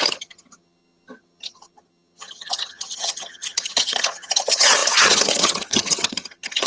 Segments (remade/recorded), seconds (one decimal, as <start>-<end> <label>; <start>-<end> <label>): 0.0-6.7 remade